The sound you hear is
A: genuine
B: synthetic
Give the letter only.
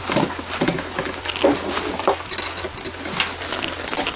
A